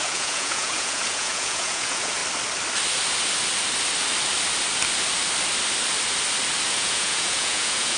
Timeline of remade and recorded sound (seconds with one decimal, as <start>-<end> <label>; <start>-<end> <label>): 0.0-2.2 remade; 2.2-6.7 recorded; 6.7-8.0 remade